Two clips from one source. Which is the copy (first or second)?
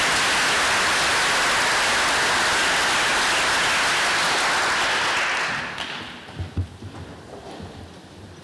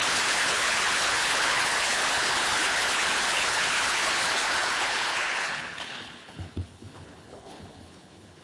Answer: second